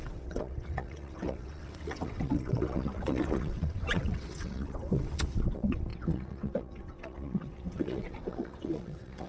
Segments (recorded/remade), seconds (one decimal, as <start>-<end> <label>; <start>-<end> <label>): 0.0-9.3 remade